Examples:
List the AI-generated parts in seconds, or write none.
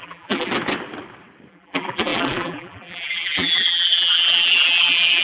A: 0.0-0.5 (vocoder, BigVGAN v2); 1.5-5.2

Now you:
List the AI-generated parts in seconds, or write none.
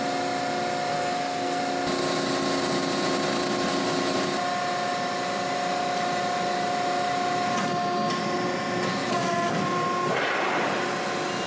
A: 0.9-1.6 (codec, SNAC)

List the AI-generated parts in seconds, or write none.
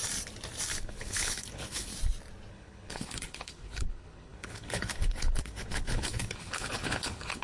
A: 0.8-1.9 (codec, HILCodec); 2.5-7.4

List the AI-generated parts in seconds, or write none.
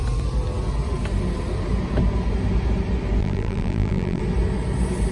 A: 3.2-4.2 (vocoder, BigVGAN v2)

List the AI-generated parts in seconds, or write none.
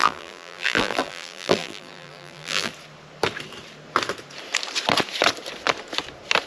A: 0.0-2.7 (vocoder, BigVGAN v2)